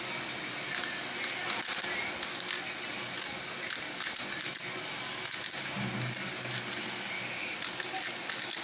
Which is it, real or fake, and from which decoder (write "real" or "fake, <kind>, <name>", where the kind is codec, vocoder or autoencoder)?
real